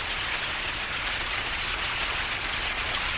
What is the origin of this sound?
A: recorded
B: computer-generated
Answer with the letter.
B